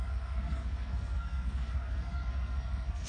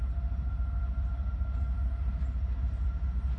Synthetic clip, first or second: first